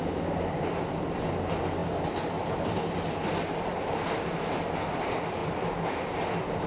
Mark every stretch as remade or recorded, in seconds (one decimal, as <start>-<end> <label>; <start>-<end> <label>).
0.0-6.7 recorded